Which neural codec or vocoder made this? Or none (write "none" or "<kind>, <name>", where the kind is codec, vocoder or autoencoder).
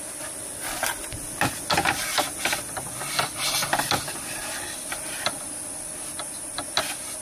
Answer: none